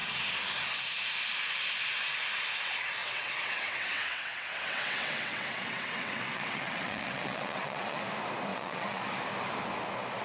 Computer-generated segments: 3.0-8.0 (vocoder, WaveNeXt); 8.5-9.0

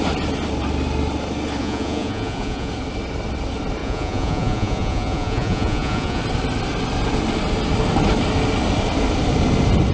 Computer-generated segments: 1.6-2.7 (vocoder, Vocos); 3.8-6.2

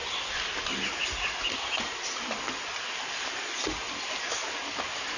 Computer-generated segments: none

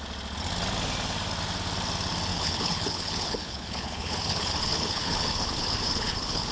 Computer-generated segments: 2.3-6.5 (codec, HILCodec)

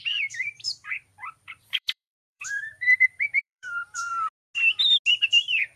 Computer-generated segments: 0.0-4.1 (vocoder, BigVGAN v2); 5.1-5.8